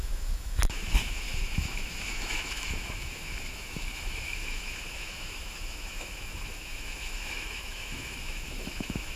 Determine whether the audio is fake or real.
fake